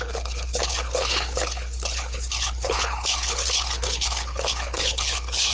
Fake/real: fake